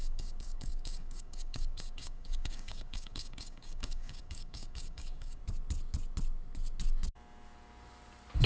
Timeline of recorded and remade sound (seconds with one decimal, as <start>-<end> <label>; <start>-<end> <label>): 0.0-5.4 remade; 5.4-8.5 recorded